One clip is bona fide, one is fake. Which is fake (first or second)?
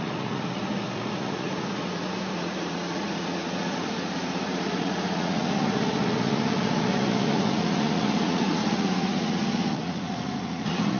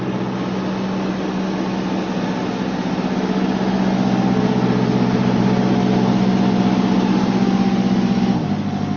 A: first